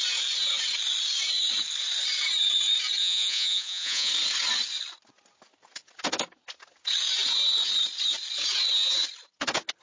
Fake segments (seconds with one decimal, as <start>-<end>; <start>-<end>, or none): 3.0-4.1